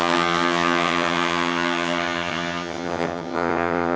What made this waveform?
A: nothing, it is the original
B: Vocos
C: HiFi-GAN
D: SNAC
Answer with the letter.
C